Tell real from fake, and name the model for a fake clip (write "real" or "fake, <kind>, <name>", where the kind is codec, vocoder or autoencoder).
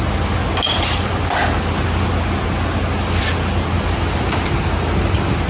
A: real